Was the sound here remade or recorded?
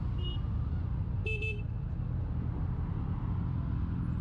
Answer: recorded